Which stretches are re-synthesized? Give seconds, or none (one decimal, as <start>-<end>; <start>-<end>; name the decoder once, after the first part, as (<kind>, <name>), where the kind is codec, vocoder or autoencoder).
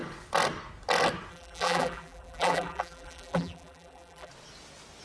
1.3-4.3 (vocoder, BigVGAN v2)